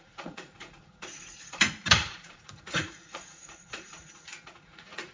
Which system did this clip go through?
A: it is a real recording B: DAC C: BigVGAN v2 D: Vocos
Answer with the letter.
D